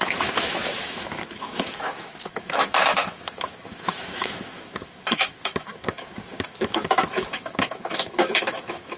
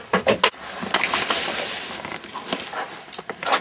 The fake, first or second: first